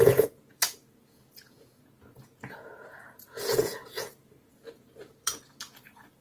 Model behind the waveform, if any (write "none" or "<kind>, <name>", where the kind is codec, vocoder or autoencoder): vocoder, Vocos